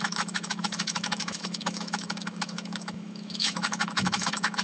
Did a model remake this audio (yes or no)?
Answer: yes